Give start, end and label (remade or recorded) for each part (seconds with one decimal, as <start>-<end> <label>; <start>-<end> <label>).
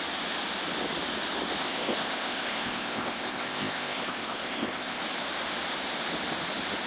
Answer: 0.0-1.6 recorded; 1.6-5.0 remade; 5.0-6.9 recorded